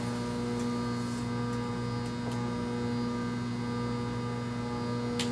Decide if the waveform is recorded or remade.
recorded